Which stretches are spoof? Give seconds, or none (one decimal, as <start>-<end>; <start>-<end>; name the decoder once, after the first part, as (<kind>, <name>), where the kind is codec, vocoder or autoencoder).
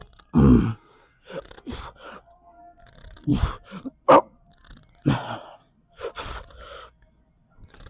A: 0.7-1.4 (codec, DAC)